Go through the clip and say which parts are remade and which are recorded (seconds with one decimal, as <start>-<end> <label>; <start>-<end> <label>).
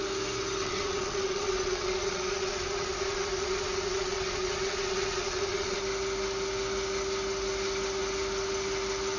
0.0-0.6 recorded; 0.6-5.8 remade; 5.8-9.2 recorded